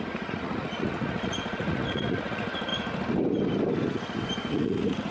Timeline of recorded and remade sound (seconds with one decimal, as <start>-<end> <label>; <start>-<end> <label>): 0.0-2.7 remade; 2.7-4.5 recorded; 4.5-5.1 remade